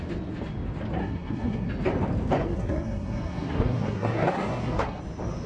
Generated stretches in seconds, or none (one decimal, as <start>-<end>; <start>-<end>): 1.0-1.7; 2.4-5.0